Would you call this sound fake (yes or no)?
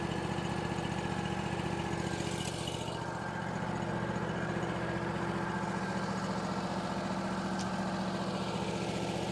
no